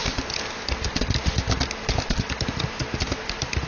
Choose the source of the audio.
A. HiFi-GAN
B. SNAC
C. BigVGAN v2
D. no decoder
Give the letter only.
D